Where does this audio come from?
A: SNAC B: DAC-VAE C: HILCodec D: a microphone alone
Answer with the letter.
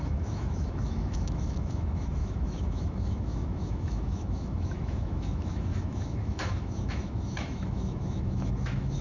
B